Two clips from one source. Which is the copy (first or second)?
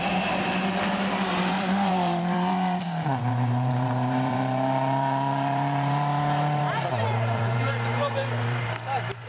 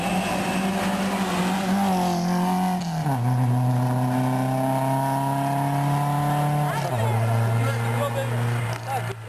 first